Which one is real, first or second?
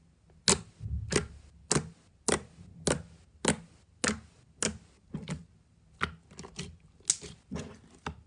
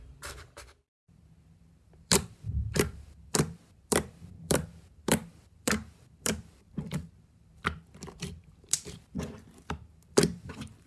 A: first